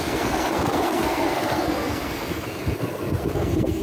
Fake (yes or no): yes